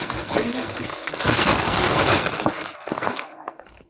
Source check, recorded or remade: remade